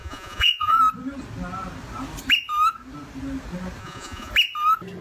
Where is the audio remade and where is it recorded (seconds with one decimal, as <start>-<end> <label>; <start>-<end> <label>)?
0.0-0.8 remade; 0.8-3.8 recorded; 3.8-4.3 remade; 4.3-5.0 recorded